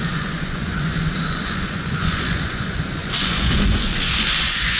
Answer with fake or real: fake